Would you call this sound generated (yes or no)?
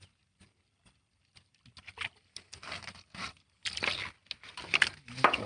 no